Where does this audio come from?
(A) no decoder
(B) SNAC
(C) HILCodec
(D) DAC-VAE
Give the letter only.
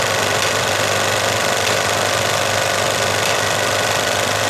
A